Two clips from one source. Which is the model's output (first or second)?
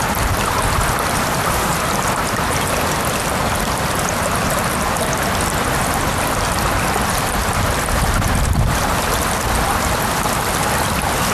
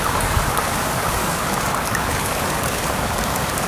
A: second